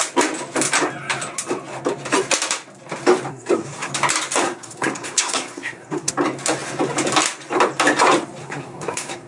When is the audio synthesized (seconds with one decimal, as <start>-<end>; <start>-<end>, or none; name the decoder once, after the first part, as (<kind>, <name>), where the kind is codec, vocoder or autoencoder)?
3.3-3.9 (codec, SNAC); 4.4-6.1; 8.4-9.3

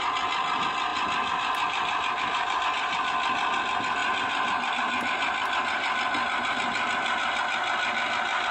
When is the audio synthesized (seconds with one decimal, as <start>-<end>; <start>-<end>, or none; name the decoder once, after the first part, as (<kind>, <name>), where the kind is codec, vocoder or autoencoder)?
none

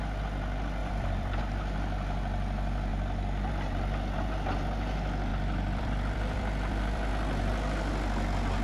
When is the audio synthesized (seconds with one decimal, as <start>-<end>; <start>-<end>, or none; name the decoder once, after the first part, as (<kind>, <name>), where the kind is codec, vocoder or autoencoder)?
0.8-1.4 (vocoder, BigVGAN v2); 2.9-3.5; 5.3-7.1